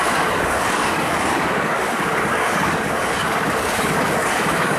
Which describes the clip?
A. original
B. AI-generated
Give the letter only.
B